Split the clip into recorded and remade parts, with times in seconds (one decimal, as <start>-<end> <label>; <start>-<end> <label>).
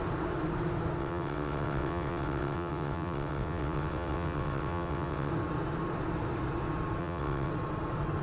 0.0-1.0 recorded; 1.0-5.3 remade; 5.3-7.0 recorded; 7.0-7.5 remade; 7.5-8.2 recorded